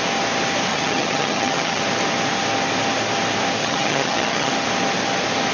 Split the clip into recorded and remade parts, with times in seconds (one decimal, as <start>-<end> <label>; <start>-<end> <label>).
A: 0.0-0.7 recorded; 0.7-1.8 remade; 1.8-3.6 recorded; 3.6-4.5 remade; 4.5-5.5 recorded